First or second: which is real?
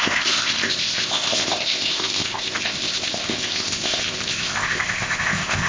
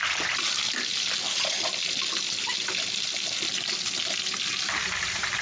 second